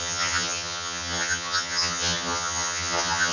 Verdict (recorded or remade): remade